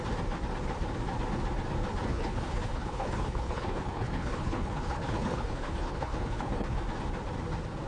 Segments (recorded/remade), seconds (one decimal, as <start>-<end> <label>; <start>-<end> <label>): 0.0-2.1 recorded; 2.1-6.8 remade; 6.8-7.9 recorded